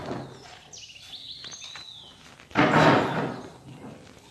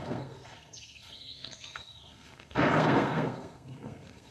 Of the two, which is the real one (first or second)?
first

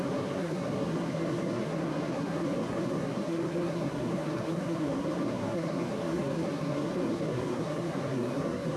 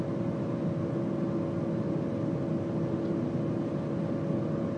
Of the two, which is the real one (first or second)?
second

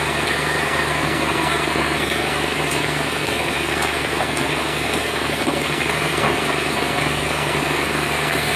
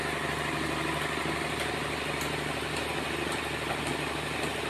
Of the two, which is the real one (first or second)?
second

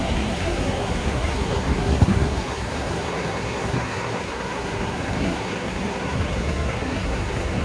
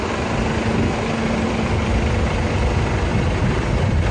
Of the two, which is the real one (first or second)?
second